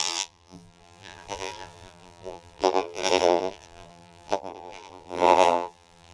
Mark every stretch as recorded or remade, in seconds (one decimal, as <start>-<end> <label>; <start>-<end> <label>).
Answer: 0.0-6.1 remade